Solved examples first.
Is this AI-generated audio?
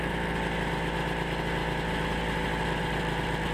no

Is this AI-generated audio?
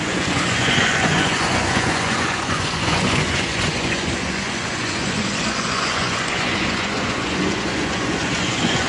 yes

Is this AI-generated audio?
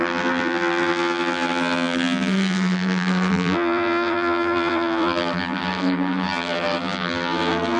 yes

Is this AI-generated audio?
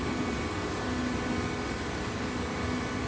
no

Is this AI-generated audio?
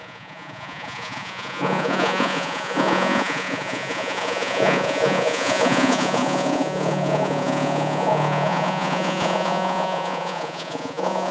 yes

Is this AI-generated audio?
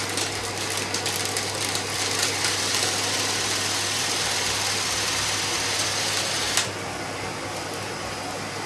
no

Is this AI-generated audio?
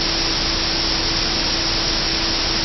no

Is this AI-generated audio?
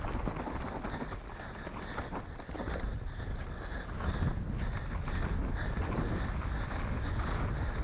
no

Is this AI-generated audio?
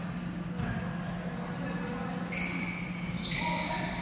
no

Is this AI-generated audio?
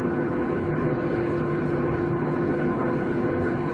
yes